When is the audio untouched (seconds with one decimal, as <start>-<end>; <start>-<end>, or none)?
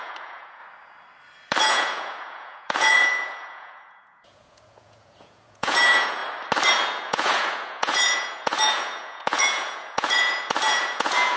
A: 0.6-1.6; 6.2-6.7